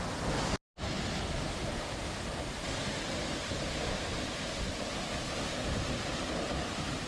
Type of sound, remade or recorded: recorded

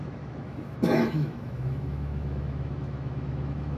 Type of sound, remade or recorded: remade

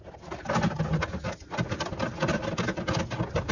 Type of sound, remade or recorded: recorded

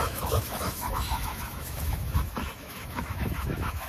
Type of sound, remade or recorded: remade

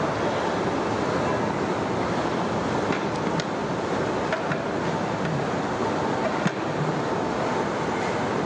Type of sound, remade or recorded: recorded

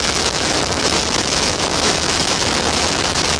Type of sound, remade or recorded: remade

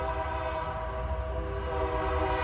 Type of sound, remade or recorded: recorded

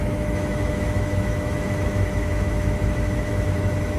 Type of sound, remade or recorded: remade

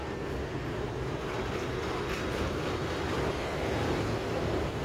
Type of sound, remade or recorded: recorded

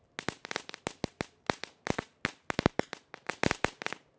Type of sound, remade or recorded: recorded